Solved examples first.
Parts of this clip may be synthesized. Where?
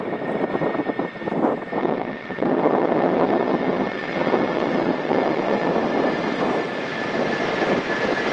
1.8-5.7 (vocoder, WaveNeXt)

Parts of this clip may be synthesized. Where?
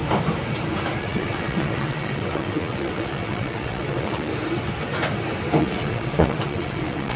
1.0-4.3 (vocoder, WaveNeXt); 5.6-7.2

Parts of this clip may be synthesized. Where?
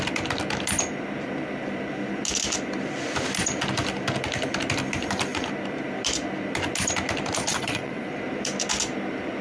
7.5-8.1 (vocoder, WaveNeXt)